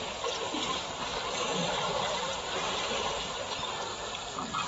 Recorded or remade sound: recorded